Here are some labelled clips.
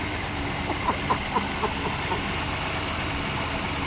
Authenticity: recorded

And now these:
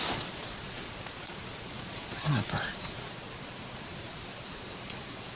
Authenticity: remade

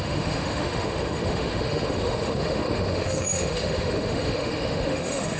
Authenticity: remade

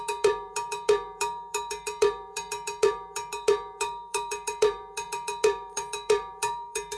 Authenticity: remade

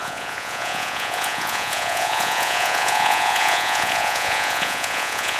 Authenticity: remade